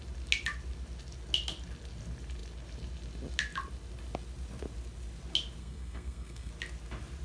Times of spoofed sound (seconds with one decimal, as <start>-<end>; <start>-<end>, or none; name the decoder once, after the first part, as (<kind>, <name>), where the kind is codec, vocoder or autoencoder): 5.6-6.5 (codec, SNAC)

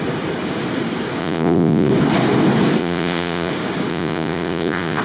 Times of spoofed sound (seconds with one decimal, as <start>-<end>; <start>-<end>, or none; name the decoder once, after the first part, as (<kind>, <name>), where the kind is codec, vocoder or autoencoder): 1.2-1.9 (vocoder, Vocos); 2.8-3.5; 3.9-5.0

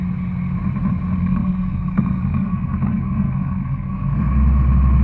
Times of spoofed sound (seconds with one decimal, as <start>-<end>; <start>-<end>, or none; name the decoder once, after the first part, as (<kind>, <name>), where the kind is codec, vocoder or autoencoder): 1.2-4.2 (codec, SNAC)

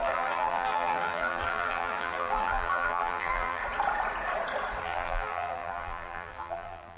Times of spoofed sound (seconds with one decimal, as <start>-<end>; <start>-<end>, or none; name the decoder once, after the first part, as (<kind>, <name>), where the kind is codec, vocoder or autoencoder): 0.0-3.6 (vocoder, BigVGAN v2); 4.8-7.0

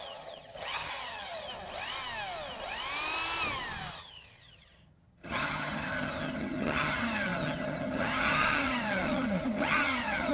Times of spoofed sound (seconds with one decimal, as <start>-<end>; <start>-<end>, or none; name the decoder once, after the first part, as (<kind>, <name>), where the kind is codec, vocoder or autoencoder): 0.0-1.5 (vocoder, HiFi-GAN); 3.9-10.3

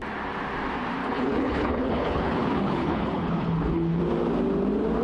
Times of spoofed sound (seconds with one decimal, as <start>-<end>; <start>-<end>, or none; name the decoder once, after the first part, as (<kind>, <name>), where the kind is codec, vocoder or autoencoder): 1.0-4.0 (codec, HILCodec)

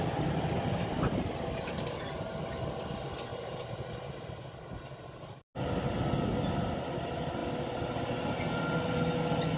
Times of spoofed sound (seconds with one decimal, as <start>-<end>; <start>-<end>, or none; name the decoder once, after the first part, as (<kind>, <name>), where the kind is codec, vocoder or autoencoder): 3.3-4.4 (vocoder, BigVGAN v2)